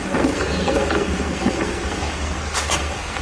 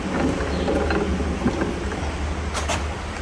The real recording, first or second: second